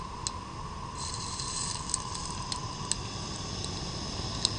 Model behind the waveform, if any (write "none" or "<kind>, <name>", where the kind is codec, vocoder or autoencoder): none